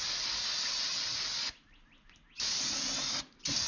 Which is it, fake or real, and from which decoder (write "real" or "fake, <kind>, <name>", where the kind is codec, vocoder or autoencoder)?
real